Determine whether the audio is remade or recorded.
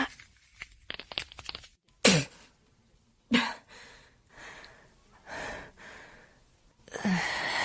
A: recorded